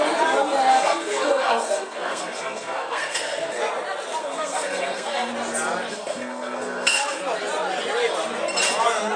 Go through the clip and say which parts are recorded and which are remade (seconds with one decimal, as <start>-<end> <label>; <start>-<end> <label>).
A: 0.0-0.7 recorded; 0.7-3.6 remade; 3.6-4.2 recorded; 4.2-5.3 remade; 5.3-5.9 recorded; 5.9-7.2 remade; 7.2-9.2 recorded